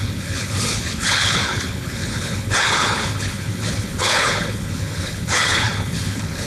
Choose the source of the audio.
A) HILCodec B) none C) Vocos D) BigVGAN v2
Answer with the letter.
A